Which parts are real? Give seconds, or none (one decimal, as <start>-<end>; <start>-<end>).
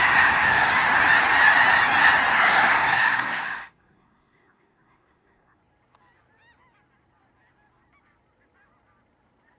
0.7-2.3; 5.6-9.6